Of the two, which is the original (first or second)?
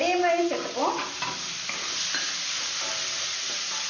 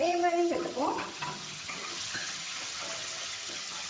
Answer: first